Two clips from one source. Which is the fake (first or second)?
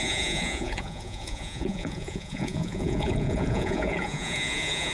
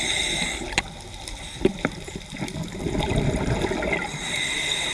first